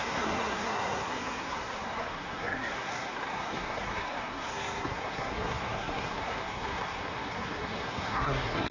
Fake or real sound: fake